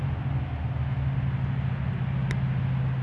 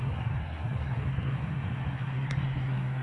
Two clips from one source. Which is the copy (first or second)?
second